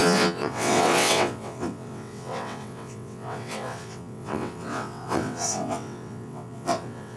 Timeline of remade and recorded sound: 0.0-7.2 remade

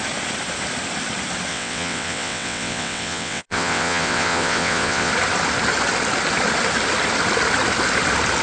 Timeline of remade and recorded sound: 0.0-1.5 recorded; 1.5-5.1 remade; 5.1-8.4 recorded